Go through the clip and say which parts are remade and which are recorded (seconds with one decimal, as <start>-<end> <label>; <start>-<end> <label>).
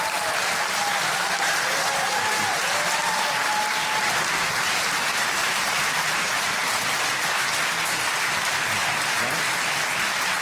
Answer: 0.0-5.4 recorded; 5.4-6.4 remade; 6.4-10.4 recorded